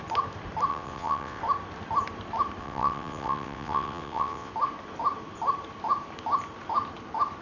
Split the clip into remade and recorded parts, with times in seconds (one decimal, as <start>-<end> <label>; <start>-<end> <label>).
0.0-0.7 recorded; 0.7-1.4 remade; 1.4-2.6 recorded; 2.6-4.5 remade; 4.5-7.4 recorded

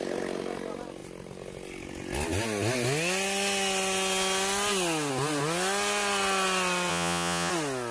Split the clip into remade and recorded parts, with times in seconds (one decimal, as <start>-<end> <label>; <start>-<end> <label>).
0.0-6.9 recorded; 6.9-7.5 remade; 7.5-7.9 recorded

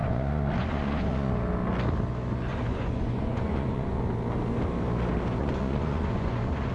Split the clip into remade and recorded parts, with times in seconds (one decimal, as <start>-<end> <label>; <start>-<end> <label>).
0.0-1.3 remade; 1.3-2.5 recorded; 2.5-4.0 remade; 4.0-5.4 recorded; 5.4-6.7 remade

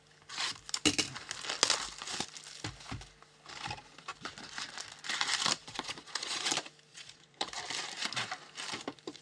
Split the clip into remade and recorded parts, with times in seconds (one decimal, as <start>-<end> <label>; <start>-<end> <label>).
0.0-5.6 recorded; 5.6-6.5 remade; 6.5-6.9 recorded; 6.9-7.5 remade; 7.5-9.2 recorded

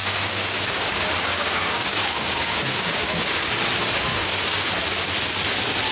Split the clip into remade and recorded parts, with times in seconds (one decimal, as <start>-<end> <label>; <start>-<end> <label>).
0.0-3.5 remade; 3.5-4.1 recorded; 4.1-4.7 remade; 4.7-5.9 recorded

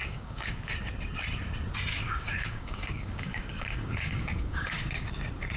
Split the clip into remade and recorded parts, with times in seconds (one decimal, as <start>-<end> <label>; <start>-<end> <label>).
0.0-0.7 remade; 0.7-1.9 recorded; 1.9-5.1 remade; 5.1-5.6 recorded